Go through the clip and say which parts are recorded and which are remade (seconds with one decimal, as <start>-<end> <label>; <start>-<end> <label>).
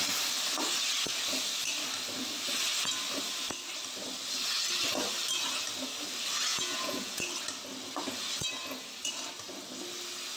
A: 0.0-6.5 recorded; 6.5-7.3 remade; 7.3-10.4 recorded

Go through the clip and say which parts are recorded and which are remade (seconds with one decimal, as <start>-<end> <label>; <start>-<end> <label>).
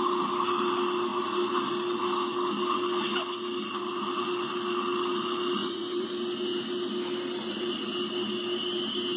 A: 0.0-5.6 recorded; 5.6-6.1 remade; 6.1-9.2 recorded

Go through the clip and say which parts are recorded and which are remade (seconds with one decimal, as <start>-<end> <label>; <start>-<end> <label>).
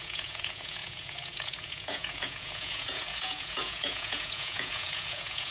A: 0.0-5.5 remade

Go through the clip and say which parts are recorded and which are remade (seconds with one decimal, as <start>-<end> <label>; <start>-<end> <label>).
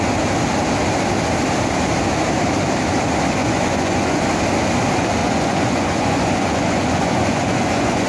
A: 0.0-3.4 recorded; 3.4-4.2 remade; 4.2-5.2 recorded; 5.2-8.1 remade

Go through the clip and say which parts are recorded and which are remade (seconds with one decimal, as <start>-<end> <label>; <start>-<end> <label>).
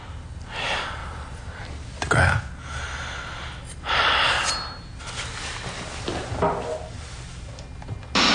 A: 0.0-8.3 recorded